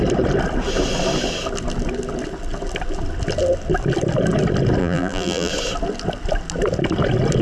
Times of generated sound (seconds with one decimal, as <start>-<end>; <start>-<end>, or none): 4.8-5.5